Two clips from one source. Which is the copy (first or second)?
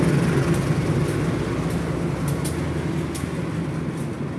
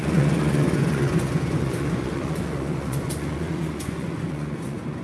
second